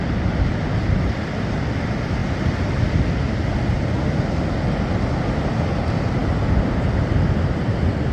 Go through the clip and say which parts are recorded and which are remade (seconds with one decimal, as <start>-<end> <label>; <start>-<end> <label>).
0.0-8.1 recorded